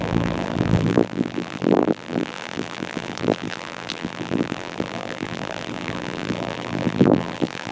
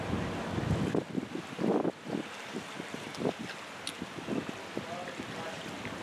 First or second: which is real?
second